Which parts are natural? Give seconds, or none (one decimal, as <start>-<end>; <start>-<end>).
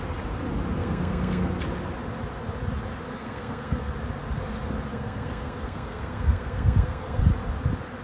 0.0-0.8; 1.5-3.2; 3.9-4.9; 7.2-8.0